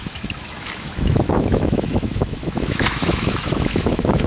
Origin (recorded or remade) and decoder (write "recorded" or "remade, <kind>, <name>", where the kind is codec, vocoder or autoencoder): remade, autoencoder, DAC-VAE